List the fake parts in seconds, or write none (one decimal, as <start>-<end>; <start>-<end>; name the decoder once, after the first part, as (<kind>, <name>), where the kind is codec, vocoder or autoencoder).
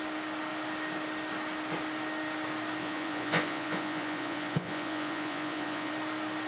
2.8-5.9 (vocoder, Vocos)